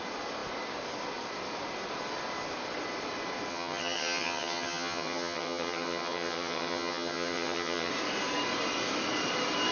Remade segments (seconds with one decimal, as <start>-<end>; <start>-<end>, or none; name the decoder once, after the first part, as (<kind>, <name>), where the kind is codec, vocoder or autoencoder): 3.5-7.9 (vocoder, HiFi-GAN)